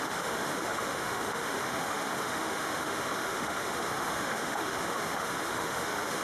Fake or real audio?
fake